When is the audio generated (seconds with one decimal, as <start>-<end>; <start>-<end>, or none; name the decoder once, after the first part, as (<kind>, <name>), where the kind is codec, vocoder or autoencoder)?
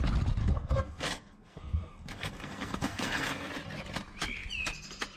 0.4-3.5 (codec, SNAC)